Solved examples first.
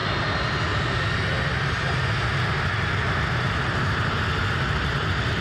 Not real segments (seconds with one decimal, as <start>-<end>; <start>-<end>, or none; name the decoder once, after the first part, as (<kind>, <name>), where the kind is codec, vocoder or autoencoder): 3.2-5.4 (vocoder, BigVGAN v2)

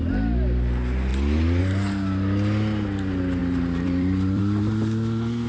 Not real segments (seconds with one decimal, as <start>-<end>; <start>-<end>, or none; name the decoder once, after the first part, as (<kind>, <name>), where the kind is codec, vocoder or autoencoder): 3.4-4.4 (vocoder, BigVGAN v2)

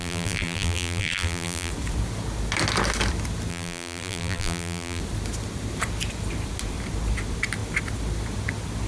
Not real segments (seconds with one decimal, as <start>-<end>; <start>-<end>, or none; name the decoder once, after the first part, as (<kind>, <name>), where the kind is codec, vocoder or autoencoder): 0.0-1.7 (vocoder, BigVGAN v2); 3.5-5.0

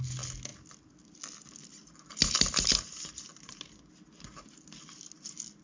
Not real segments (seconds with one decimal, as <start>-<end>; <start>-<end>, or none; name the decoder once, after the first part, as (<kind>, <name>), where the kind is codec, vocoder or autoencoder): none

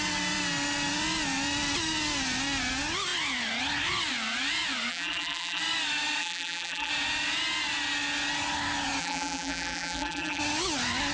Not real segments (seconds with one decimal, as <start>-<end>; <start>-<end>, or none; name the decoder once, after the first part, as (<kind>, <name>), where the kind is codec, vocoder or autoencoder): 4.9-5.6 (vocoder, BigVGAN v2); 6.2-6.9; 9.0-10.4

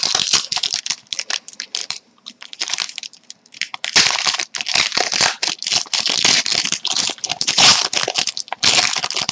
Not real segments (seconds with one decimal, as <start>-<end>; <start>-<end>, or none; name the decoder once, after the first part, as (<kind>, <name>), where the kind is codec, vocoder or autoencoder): 1.8-3.2 (vocoder, BigVGAN v2)

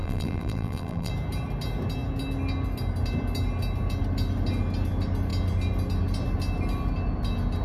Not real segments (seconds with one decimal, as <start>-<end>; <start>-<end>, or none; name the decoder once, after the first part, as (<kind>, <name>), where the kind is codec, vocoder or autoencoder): 0.0-1.1 (vocoder, BigVGAN v2)

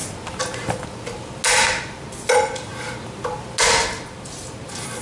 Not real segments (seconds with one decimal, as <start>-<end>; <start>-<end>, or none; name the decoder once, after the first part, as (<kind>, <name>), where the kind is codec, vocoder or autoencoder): none